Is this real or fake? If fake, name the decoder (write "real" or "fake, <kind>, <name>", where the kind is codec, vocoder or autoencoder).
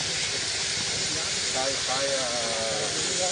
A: real